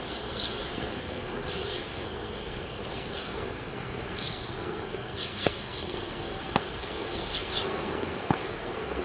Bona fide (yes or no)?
no